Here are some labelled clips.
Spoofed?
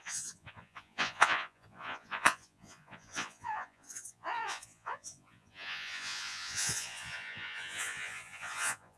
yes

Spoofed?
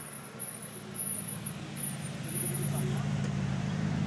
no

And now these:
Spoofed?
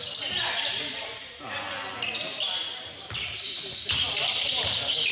no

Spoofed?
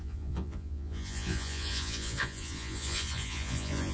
yes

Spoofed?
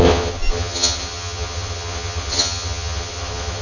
yes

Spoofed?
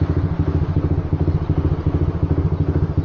no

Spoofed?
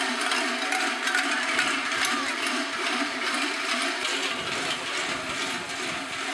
no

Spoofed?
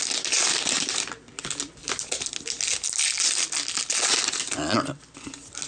no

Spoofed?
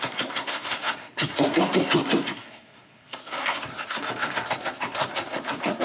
yes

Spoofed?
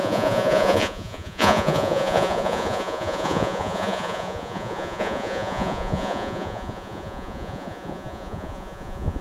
yes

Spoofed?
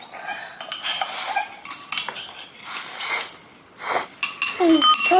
no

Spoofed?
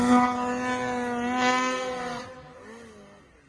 no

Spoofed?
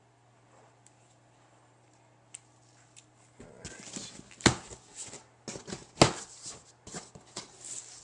no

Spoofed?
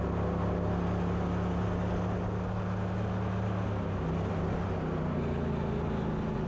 no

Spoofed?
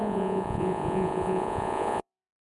yes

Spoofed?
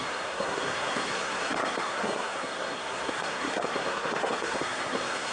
yes